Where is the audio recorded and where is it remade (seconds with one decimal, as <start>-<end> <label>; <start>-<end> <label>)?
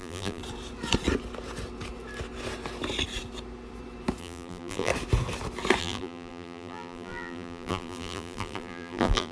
0.0-0.4 remade; 0.4-4.2 recorded; 4.2-4.9 remade; 4.9-5.8 recorded; 5.8-9.3 remade